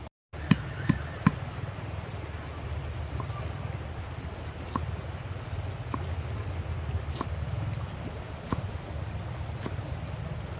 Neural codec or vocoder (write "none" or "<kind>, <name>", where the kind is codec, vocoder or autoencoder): none